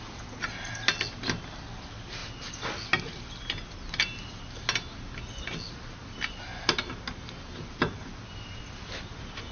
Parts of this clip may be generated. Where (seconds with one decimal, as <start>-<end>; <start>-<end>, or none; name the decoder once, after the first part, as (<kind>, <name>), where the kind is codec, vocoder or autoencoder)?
none